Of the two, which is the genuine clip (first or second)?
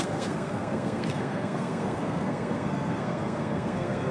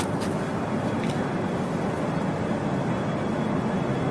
second